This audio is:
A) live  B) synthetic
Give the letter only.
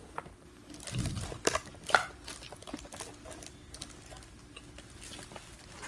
A